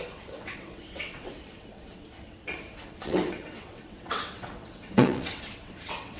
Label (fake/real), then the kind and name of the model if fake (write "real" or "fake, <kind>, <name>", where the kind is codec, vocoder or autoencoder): fake, vocoder, WaveNeXt